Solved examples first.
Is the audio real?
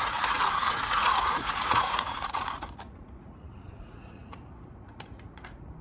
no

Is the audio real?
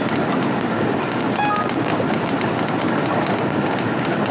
yes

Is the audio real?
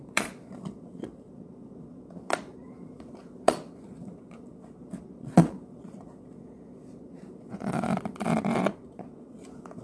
no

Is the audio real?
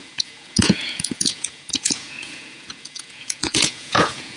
no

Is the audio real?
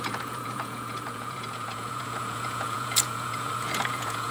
no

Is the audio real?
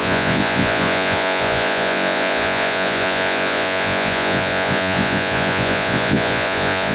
no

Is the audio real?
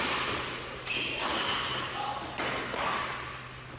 yes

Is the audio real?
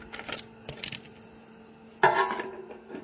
yes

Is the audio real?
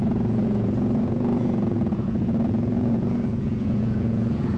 no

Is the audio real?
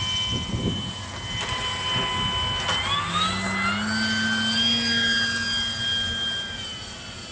yes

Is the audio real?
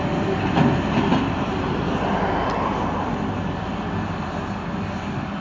yes